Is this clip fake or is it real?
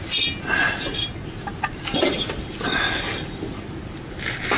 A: real